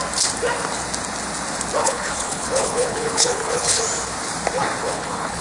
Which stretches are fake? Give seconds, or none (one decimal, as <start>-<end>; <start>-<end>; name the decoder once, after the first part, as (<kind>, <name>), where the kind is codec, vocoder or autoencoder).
1.8-3.8 (codec, HILCodec); 4.8-5.4